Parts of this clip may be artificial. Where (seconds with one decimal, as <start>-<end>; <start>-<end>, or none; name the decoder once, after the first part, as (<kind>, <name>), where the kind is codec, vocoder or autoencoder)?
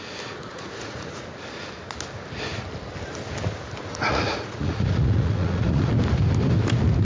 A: 0.4-1.2 (vocoder, Vocos); 3.9-5.9